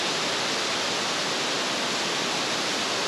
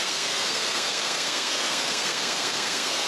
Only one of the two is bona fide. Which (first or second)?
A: first